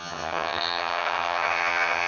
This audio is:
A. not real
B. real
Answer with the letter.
A